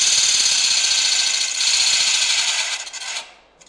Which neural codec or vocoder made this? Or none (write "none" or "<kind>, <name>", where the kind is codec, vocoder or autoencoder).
none